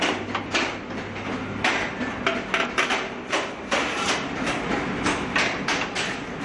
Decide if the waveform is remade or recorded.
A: recorded